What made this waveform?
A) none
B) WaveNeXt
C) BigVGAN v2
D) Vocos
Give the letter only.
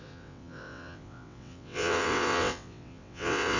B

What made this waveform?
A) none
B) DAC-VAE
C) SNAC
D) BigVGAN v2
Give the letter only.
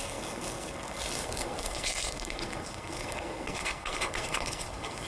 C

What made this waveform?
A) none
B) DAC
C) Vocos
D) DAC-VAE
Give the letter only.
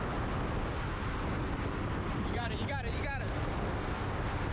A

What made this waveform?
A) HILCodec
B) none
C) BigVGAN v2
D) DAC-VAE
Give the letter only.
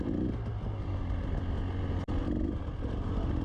B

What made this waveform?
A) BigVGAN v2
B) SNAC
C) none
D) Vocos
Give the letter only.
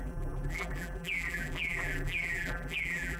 A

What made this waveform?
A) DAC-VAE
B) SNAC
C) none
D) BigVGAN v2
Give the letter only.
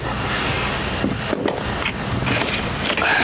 C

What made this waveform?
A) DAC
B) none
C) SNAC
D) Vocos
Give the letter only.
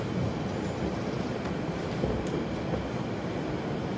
B